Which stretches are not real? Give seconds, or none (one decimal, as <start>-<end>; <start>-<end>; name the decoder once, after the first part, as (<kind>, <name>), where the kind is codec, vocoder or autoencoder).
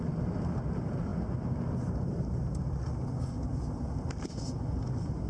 none